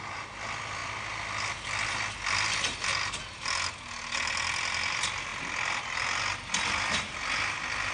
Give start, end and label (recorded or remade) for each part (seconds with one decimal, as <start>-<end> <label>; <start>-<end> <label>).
0.0-7.9 recorded